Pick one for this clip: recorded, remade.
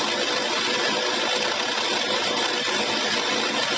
recorded